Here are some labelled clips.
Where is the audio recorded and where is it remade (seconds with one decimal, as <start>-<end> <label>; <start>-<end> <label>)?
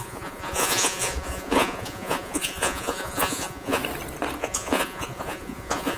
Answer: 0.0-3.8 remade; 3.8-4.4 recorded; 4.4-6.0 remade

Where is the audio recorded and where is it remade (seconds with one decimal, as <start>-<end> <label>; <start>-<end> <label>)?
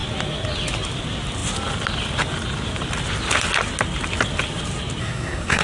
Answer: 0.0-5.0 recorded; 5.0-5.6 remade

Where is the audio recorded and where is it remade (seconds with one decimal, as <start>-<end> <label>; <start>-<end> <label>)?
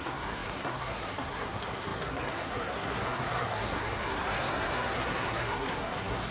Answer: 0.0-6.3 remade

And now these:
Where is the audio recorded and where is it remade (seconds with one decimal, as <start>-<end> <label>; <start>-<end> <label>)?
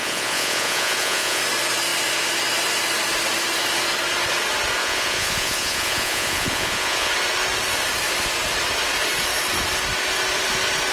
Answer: 0.0-1.4 remade; 1.4-4.8 recorded; 4.8-7.1 remade; 7.1-10.9 recorded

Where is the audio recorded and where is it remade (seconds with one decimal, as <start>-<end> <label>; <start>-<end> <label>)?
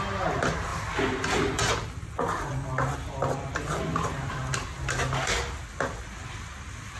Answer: 0.0-7.0 recorded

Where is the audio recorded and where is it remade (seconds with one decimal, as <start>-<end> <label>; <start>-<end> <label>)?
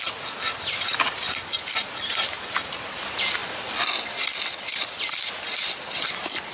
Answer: 0.0-6.5 recorded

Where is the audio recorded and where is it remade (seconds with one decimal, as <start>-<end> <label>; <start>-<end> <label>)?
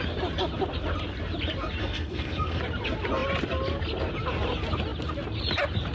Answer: 0.0-1.8 recorded; 1.8-2.6 remade; 2.6-5.9 recorded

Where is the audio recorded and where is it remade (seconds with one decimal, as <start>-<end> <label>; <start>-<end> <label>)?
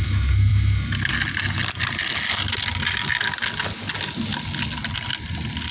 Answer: 0.0-5.7 recorded